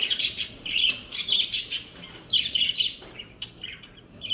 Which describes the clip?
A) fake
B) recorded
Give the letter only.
A